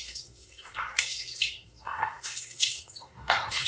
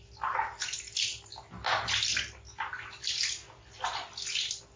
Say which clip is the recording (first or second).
second